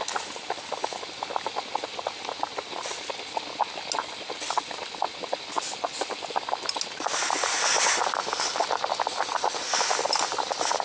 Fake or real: real